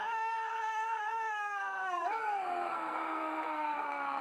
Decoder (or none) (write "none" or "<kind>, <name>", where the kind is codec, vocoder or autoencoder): codec, SNAC